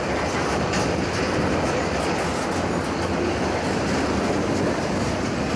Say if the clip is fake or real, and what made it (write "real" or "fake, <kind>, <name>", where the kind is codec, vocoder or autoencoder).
real